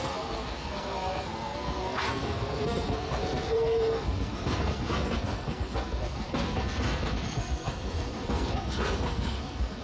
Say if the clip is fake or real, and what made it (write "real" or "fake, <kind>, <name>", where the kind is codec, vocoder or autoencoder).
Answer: fake, codec, SNAC